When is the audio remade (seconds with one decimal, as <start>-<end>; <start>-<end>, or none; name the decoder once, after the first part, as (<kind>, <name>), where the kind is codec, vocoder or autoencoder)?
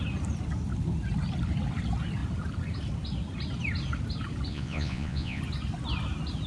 4.5-5.4 (vocoder, Vocos)